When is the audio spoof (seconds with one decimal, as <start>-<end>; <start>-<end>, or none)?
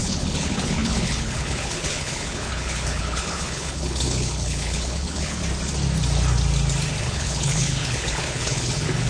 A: 0.0-5.4; 7.0-9.1